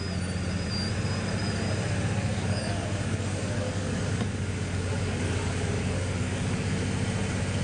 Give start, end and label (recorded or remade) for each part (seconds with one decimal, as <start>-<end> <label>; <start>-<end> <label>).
0.0-2.2 recorded; 2.2-6.8 remade; 6.8-7.6 recorded